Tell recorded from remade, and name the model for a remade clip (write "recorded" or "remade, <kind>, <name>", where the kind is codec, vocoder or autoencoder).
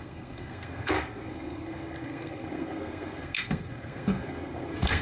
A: remade, codec, SNAC